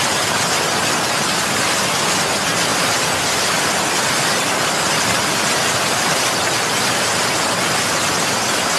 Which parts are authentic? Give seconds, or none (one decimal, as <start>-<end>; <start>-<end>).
0.0-8.8